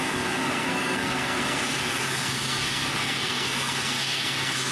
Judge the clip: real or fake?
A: fake